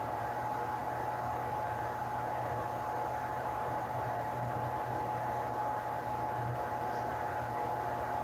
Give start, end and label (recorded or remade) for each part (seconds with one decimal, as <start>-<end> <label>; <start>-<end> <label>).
0.0-3.3 recorded; 3.3-5.0 remade; 5.0-8.2 recorded